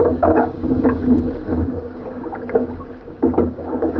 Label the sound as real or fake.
fake